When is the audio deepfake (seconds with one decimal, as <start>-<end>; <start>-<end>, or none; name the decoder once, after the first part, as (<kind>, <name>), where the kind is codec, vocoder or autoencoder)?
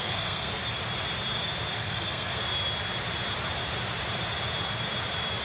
0.0-0.6 (codec, SNAC); 1.8-2.4